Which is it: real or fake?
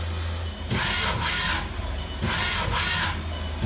real